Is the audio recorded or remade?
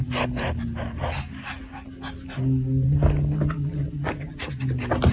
recorded